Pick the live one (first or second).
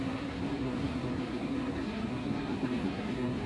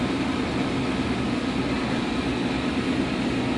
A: second